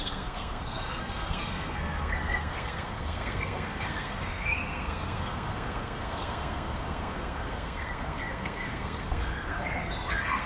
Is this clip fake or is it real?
fake